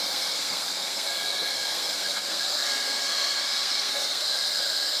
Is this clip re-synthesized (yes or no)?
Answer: yes